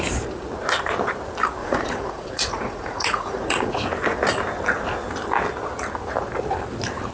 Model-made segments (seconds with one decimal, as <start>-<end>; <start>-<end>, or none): 1.6-3.8